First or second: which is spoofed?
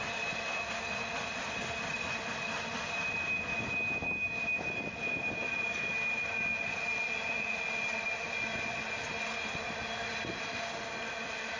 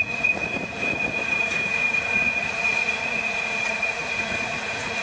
second